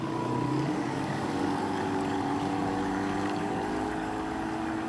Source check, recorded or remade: remade